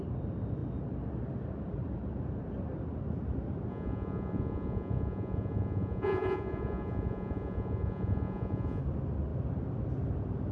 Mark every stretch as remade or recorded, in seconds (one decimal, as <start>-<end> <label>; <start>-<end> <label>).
0.0-3.7 recorded; 3.7-8.8 remade; 8.8-10.5 recorded